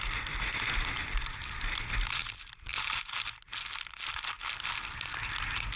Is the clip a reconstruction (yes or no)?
no